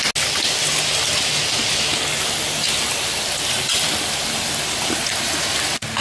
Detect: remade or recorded recorded